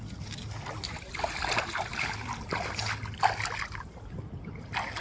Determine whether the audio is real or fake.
real